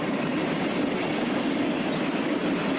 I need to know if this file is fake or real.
real